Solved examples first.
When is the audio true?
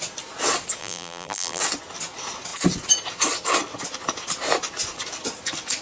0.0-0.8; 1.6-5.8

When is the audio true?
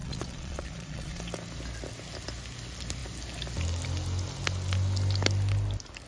1.2-6.1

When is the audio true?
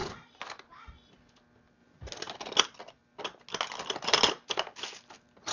0.0-5.5